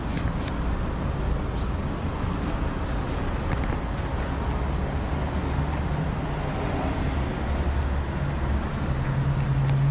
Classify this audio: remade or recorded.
recorded